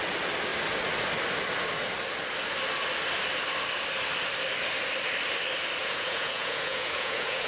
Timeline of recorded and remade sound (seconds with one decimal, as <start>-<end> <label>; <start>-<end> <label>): 0.0-5.8 recorded; 5.8-7.5 remade